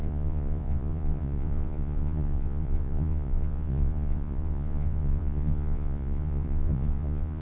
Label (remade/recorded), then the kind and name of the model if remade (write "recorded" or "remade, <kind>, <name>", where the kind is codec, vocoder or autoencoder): remade, vocoder, Vocos